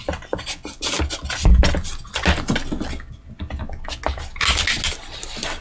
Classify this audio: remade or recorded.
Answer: recorded